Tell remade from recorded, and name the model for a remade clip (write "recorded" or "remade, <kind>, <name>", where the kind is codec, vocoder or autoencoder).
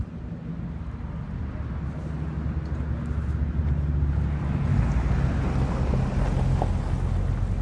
recorded